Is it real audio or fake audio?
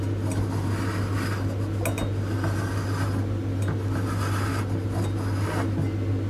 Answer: real